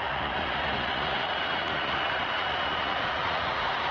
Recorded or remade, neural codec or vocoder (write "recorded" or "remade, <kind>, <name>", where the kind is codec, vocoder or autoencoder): remade, vocoder, Vocos